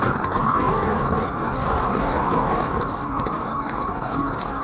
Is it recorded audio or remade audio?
remade